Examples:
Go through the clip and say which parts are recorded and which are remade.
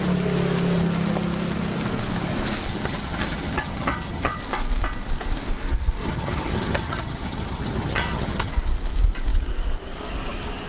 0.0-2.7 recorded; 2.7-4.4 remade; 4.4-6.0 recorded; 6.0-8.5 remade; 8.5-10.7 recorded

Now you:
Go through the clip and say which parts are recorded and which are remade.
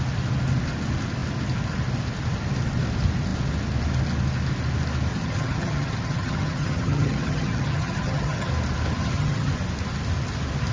0.0-5.1 recorded; 5.1-8.5 remade; 8.5-9.0 recorded; 9.0-9.5 remade; 9.5-10.7 recorded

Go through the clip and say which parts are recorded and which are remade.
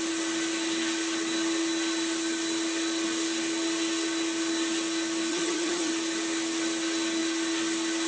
0.0-5.3 recorded; 5.3-5.9 remade; 5.9-8.1 recorded